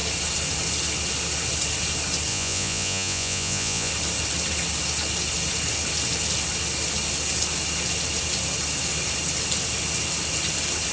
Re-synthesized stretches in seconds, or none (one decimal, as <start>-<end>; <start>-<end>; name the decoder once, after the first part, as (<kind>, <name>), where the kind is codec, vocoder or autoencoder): 2.3-3.9 (vocoder, Vocos)